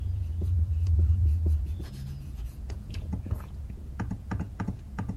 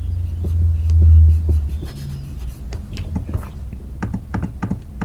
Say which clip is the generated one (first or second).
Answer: first